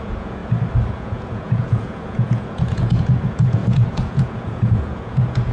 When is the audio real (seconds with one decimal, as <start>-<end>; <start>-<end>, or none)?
0.4-0.9

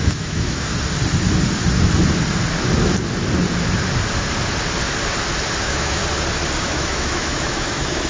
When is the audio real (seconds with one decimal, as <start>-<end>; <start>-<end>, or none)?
0.7-5.6; 6.0-6.6